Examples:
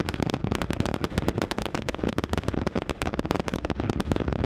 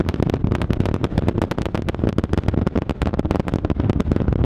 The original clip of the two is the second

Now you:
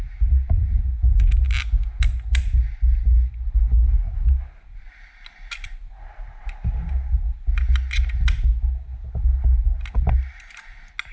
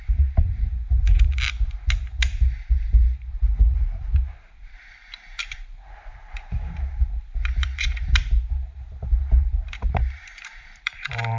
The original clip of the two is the first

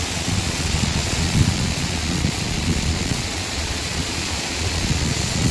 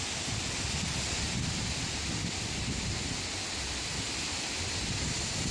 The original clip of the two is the second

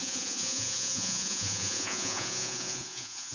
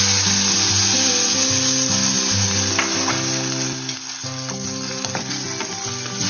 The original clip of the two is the second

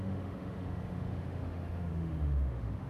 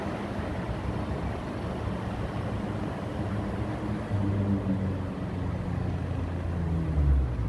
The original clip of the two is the second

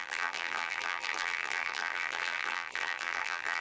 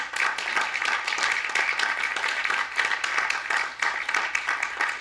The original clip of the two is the second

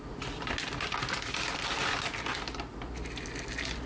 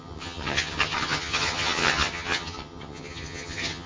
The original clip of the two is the first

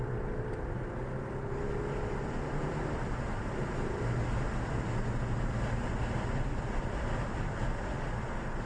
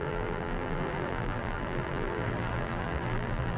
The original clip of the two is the first